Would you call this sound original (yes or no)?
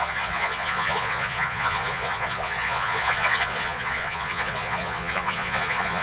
no